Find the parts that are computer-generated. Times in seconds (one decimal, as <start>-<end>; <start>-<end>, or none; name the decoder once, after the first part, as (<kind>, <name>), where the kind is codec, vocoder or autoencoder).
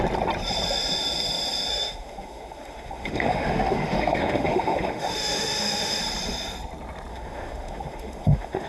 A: 1.7-6.0 (autoencoder, DAC-VAE); 7.1-8.7